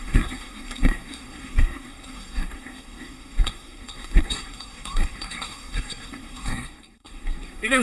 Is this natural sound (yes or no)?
no